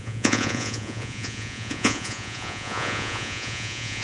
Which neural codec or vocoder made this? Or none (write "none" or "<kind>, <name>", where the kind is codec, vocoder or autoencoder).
vocoder, Vocos